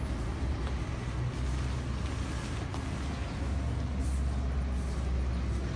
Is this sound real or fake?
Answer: real